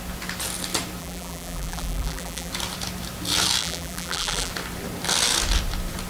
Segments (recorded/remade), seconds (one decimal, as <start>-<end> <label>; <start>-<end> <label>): 0.0-1.0 recorded; 1.0-2.5 remade; 2.5-3.6 recorded; 3.6-4.5 remade; 4.5-6.1 recorded